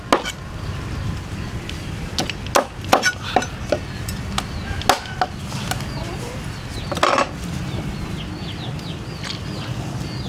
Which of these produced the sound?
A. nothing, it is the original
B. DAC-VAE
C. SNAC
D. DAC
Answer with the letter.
A